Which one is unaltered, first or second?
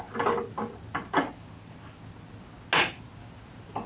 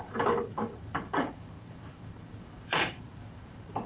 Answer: first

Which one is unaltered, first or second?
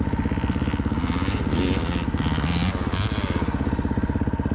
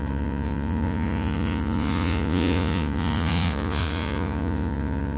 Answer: first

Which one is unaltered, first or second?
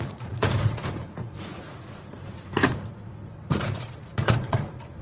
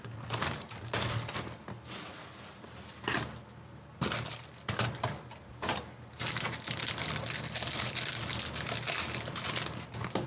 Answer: second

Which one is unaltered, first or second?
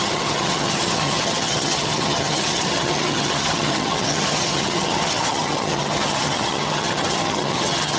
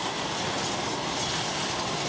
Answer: second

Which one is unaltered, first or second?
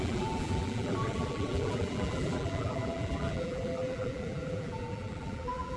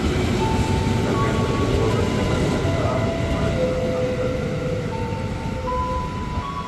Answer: second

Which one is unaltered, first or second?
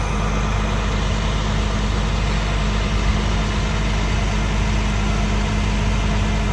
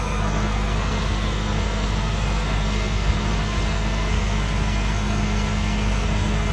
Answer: first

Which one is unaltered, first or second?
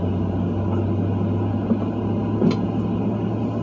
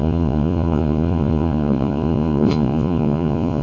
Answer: first